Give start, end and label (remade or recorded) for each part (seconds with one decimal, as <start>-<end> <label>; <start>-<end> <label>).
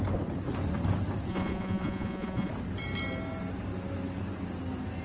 0.0-1.3 recorded; 1.3-2.5 remade; 2.5-5.0 recorded